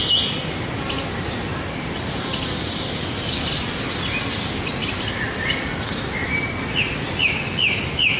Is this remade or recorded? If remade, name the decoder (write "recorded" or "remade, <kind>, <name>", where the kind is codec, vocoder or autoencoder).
recorded